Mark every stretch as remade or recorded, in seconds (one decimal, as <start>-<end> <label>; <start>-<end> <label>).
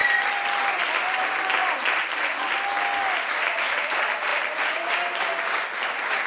0.0-0.8 remade; 0.8-1.6 recorded; 1.6-2.2 remade; 2.2-6.3 recorded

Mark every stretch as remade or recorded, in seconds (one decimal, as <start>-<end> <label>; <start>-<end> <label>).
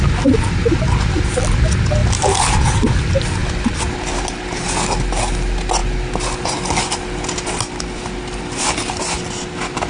0.0-2.0 recorded; 2.0-2.5 remade; 2.5-9.9 recorded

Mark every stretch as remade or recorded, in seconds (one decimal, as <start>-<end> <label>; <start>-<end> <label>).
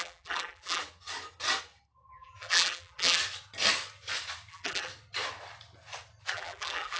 0.0-0.8 remade; 0.8-2.1 recorded; 2.1-3.2 remade; 3.2-4.5 recorded; 4.5-4.9 remade; 4.9-6.2 recorded; 6.2-7.0 remade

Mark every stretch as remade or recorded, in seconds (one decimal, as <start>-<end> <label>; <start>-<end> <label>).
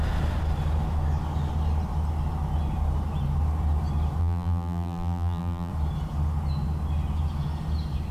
0.0-4.2 recorded; 4.2-5.7 remade; 5.7-8.1 recorded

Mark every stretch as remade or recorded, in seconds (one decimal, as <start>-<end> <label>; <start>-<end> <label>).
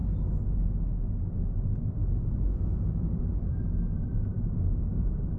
0.0-1.3 recorded; 1.3-5.4 remade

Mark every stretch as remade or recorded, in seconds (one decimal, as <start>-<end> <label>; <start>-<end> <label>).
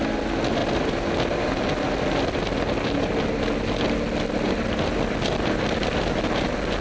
0.0-6.8 recorded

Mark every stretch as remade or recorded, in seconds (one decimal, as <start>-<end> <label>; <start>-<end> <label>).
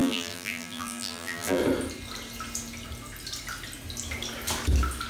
0.0-1.6 remade; 1.6-5.1 recorded